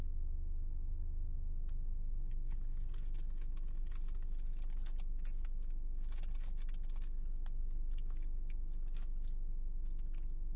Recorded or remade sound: recorded